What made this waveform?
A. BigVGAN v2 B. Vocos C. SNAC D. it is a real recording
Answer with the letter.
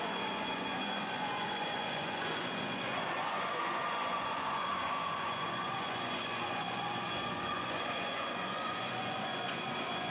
B